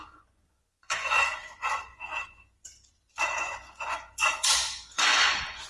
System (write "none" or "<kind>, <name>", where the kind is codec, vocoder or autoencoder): vocoder, Vocos